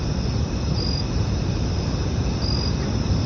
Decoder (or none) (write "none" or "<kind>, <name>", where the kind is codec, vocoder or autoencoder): none